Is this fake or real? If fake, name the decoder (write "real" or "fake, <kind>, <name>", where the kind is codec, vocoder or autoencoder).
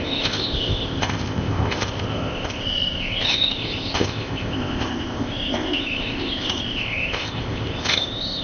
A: fake, codec, ZipCodec